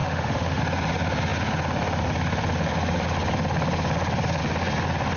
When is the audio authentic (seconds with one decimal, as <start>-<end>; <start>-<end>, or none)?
0.6-5.2